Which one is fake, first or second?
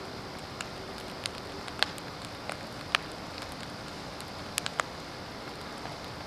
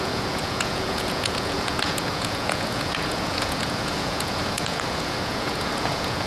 second